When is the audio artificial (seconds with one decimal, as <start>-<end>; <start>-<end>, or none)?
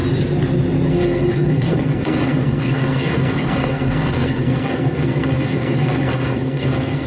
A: 0.9-7.1